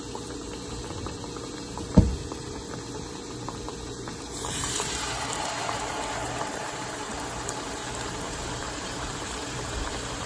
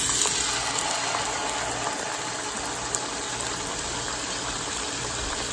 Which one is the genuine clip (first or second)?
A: second